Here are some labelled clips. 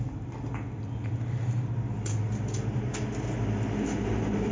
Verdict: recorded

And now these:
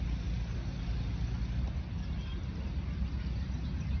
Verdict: recorded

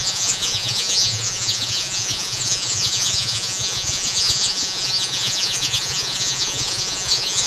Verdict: remade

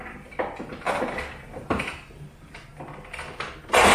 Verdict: recorded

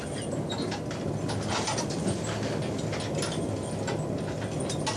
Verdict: recorded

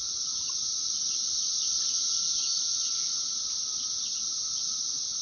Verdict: recorded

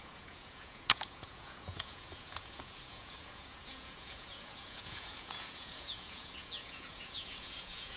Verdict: remade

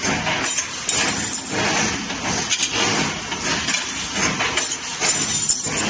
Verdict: recorded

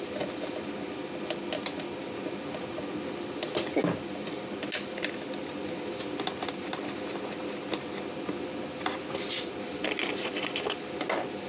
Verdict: recorded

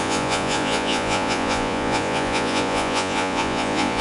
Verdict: remade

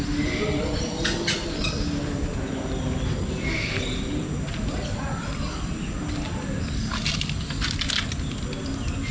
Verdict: recorded